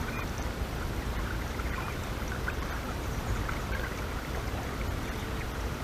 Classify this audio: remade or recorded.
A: remade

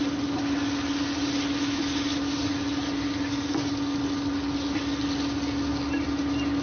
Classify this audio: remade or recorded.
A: recorded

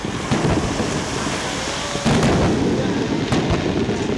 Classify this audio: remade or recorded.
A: recorded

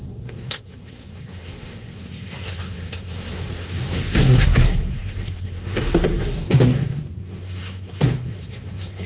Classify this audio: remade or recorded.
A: remade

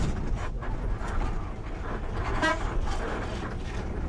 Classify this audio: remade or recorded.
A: remade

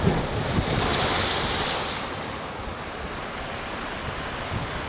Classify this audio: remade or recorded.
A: recorded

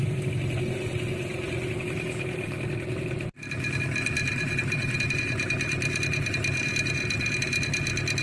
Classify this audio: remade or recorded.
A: recorded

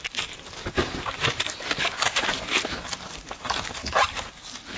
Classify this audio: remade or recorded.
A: remade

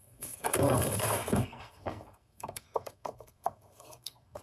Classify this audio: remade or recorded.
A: remade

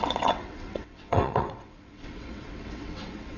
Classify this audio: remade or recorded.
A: remade